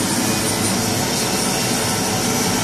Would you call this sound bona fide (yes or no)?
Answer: yes